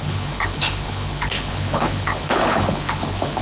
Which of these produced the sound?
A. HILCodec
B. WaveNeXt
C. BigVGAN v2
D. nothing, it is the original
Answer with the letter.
A